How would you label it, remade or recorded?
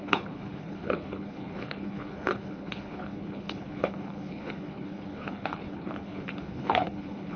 remade